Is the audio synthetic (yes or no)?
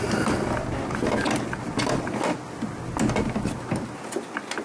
no